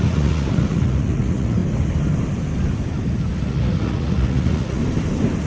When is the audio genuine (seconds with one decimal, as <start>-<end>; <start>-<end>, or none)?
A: 1.6-3.4; 4.8-5.5